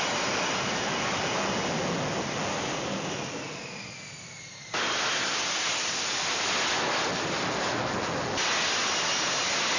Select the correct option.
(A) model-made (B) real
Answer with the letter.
B